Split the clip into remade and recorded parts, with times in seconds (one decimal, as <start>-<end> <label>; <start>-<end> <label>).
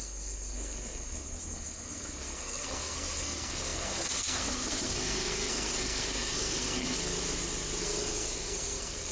0.0-7.1 remade; 7.1-7.8 recorded; 7.8-9.1 remade